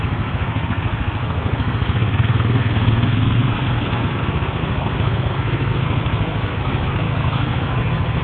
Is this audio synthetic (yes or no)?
yes